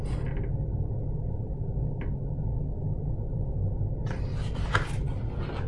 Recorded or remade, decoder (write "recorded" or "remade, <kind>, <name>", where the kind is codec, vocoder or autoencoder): recorded